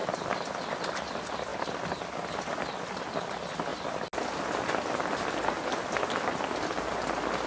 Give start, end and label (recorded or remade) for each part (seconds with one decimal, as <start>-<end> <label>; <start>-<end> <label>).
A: 0.0-7.5 recorded